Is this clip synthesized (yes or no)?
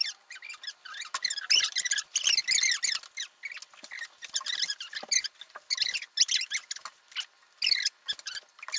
no